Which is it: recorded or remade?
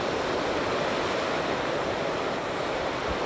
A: recorded